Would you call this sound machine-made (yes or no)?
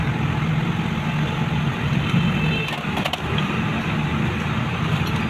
no